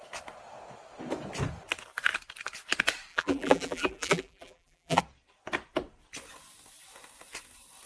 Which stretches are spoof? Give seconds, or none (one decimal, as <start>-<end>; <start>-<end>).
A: 3.1-5.0